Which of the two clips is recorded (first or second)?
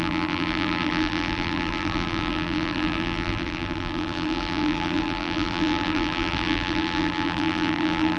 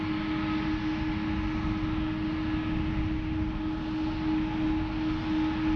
second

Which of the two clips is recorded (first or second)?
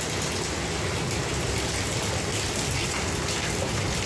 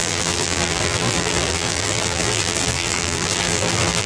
first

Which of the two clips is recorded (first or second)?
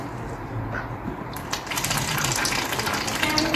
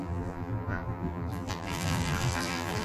first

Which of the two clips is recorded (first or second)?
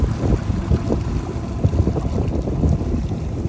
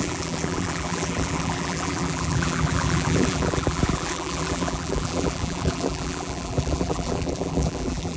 first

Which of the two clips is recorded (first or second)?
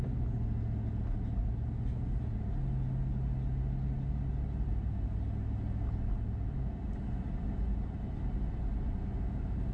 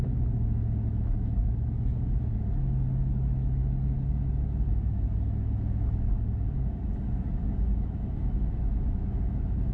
first